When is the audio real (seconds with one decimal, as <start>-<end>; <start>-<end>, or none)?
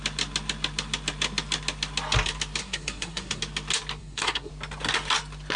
0.0-2.6; 3.4-4.0; 4.5-5.6